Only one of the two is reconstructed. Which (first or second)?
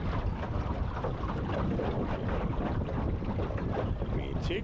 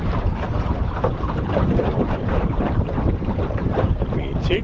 second